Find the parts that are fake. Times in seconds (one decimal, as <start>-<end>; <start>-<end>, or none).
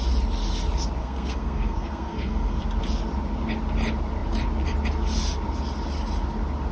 1.0-2.6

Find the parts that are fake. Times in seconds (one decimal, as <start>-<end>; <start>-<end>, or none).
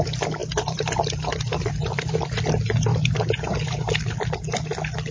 0.4-2.4; 2.9-3.8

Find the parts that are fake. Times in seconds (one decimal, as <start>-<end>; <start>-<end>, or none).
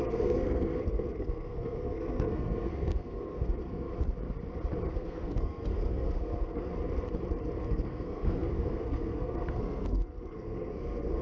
0.0-3.9; 4.9-6.7; 7.6-11.2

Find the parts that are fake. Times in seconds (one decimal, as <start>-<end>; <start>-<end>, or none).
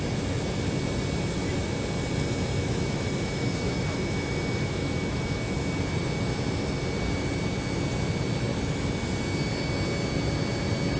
2.6-5.8